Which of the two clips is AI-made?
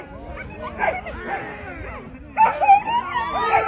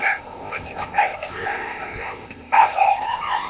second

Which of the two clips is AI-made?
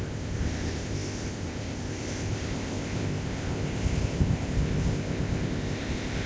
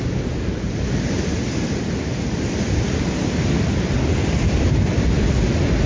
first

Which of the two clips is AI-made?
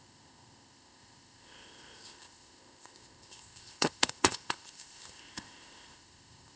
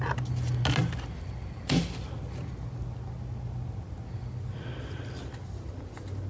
first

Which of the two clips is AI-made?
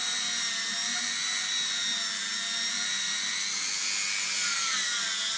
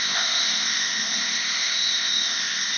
second